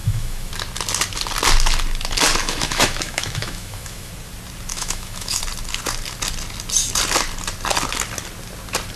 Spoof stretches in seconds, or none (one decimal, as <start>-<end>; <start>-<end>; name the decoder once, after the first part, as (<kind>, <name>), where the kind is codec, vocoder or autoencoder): 0.0-0.5 (autoencoder, DAC-VAE); 2.4-4.1; 4.7-5.4